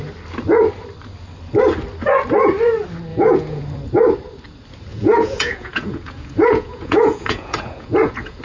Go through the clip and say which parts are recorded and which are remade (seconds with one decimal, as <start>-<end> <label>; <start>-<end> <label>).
0.0-3.1 recorded; 3.1-3.6 remade; 3.6-4.9 recorded; 4.9-8.4 remade